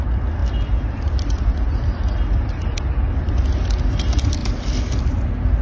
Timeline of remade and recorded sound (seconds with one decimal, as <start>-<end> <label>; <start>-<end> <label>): 0.0-0.4 recorded; 0.4-3.8 remade; 3.8-4.4 recorded; 4.4-5.1 remade; 5.1-5.6 recorded